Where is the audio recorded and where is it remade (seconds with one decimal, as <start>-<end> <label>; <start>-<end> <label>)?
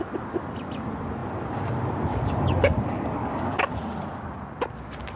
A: 0.0-2.1 recorded; 2.1-3.8 remade; 3.8-5.2 recorded